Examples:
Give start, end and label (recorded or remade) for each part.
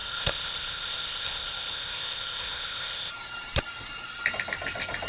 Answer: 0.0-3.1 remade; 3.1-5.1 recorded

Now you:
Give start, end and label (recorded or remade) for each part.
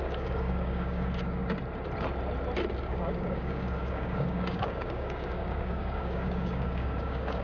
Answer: 0.0-1.4 remade; 1.4-2.8 recorded; 2.8-7.4 remade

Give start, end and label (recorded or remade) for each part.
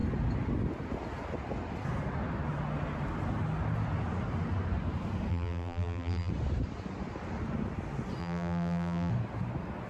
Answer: 0.0-5.3 recorded; 5.3-6.3 remade; 6.3-8.2 recorded; 8.2-9.1 remade; 9.1-9.9 recorded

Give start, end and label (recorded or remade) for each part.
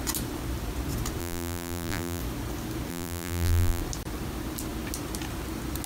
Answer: 0.0-1.2 recorded; 1.2-2.2 remade; 2.2-2.9 recorded; 2.9-3.8 remade; 3.8-5.9 recorded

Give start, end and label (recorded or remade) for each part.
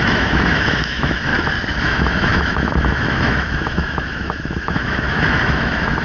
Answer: 0.0-1.3 remade; 1.3-1.8 recorded; 1.8-6.0 remade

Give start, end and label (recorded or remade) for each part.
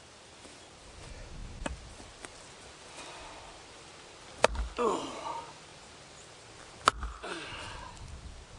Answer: 0.0-8.6 recorded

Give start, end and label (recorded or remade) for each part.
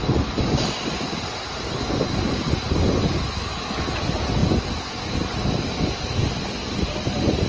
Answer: 0.0-7.5 recorded